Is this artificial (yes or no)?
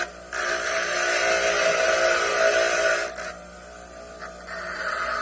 no